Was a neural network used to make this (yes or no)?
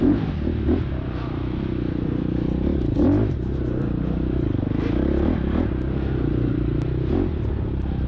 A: no